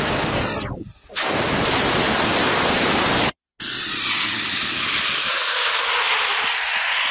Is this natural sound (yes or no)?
yes